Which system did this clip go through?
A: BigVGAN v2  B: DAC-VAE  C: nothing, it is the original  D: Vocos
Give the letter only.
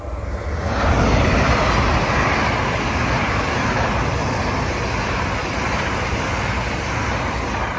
C